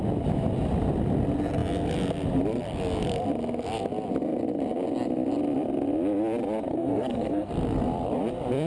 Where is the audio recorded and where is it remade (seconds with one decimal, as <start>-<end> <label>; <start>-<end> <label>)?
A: 0.0-6.7 recorded; 6.7-7.5 remade; 7.5-8.7 recorded